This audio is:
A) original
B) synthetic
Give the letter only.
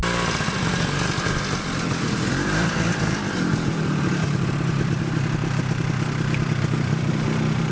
B